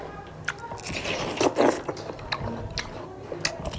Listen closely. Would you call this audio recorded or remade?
recorded